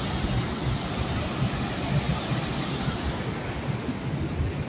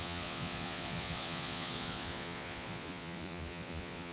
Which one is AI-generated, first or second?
second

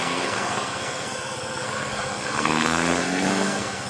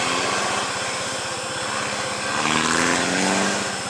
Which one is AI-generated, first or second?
first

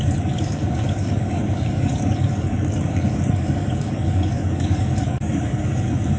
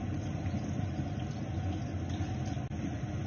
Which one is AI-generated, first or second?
first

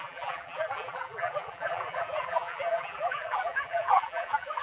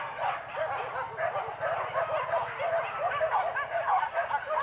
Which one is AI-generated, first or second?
first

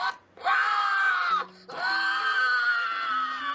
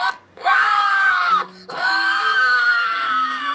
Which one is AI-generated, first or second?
second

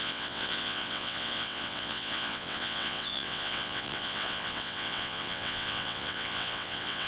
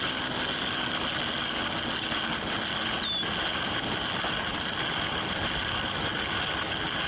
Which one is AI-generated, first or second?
first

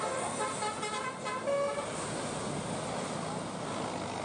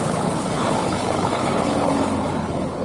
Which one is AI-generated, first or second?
second